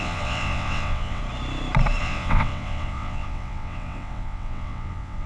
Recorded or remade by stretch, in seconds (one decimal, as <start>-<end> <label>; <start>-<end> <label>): 0.0-1.2 remade; 1.2-2.0 recorded; 2.0-5.3 remade